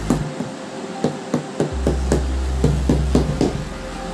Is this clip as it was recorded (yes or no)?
yes